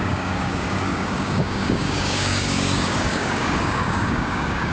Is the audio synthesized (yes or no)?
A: yes